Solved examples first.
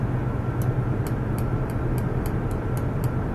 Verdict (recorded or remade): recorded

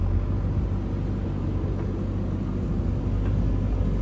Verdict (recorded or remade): recorded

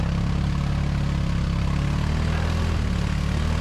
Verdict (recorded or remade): recorded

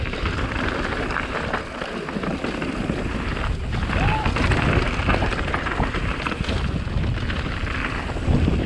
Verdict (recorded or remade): recorded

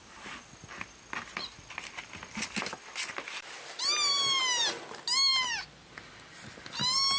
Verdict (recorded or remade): recorded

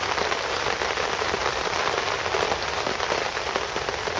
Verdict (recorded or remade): remade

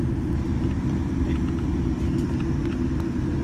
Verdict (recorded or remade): recorded